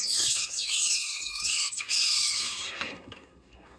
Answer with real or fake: fake